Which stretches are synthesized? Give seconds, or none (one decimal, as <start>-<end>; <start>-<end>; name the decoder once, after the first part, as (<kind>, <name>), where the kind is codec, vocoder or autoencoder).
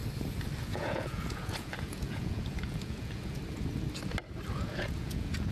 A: 0.6-3.4 (vocoder, Vocos); 4.5-5.5